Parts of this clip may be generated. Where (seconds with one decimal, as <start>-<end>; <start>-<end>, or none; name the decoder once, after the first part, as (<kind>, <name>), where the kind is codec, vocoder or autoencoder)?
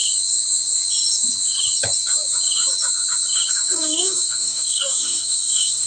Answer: 3.5-5.9 (codec, DAC)